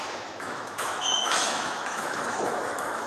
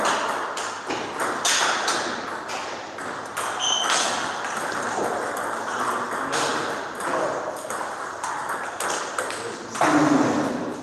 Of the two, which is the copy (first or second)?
first